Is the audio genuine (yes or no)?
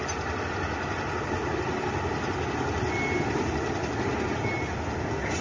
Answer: yes